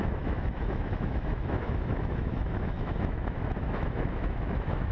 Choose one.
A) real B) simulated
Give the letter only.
B